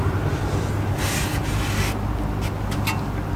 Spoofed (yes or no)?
no